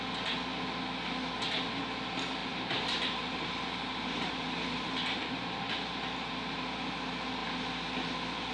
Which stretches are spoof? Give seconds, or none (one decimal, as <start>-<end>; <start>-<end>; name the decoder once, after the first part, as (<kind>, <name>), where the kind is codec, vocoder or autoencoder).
2.4-6.0 (vocoder, BigVGAN v2)

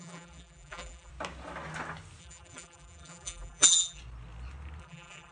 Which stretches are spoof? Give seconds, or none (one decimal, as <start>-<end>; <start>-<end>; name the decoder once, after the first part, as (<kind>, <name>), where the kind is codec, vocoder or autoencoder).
0.0-1.1 (vocoder, BigVGAN v2); 2.2-4.0; 4.8-5.3

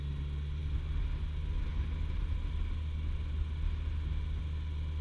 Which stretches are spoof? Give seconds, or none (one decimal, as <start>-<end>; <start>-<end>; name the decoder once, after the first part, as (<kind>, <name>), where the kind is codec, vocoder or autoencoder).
none